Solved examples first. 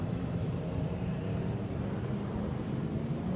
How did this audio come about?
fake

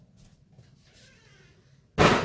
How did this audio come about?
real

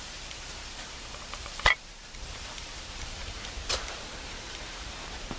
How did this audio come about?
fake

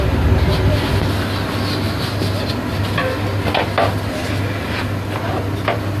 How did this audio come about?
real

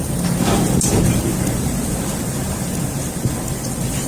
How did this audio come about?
real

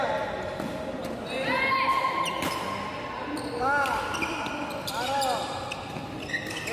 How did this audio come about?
real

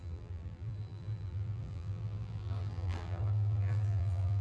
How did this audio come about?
fake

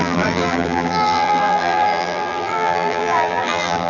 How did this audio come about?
fake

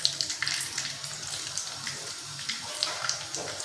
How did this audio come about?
fake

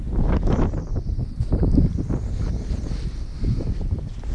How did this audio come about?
real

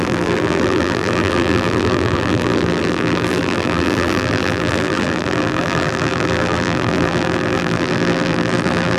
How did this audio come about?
fake